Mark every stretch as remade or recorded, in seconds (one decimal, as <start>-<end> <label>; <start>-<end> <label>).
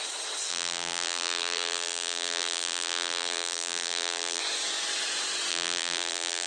0.0-0.5 recorded; 0.5-4.4 remade; 4.4-5.5 recorded; 5.5-6.5 remade